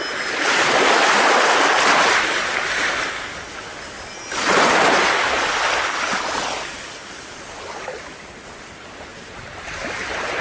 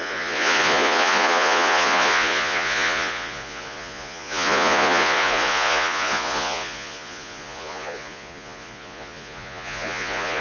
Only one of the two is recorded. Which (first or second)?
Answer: first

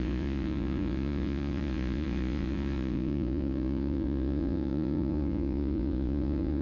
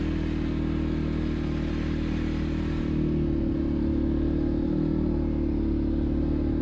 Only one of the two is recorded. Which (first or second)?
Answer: second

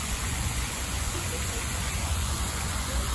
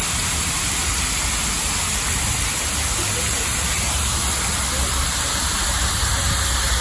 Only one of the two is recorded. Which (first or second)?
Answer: second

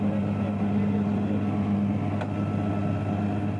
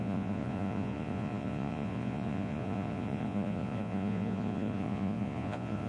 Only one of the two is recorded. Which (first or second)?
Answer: first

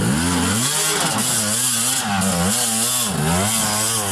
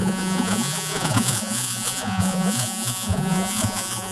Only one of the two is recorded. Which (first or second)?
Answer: first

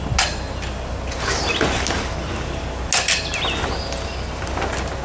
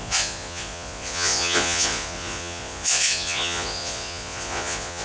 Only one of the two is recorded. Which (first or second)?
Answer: first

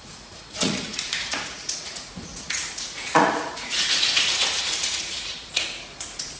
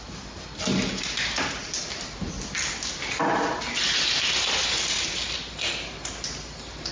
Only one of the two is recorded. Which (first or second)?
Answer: second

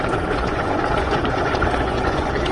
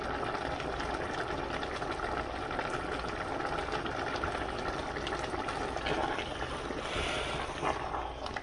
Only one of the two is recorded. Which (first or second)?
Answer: second